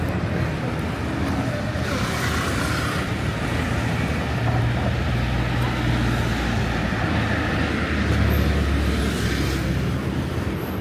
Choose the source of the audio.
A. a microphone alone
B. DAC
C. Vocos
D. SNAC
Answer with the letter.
A